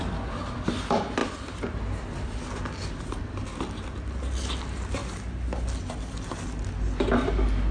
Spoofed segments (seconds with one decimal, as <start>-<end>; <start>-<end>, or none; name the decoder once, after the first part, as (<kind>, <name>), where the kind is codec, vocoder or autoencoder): none